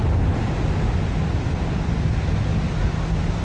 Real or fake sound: real